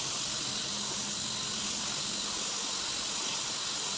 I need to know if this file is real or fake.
real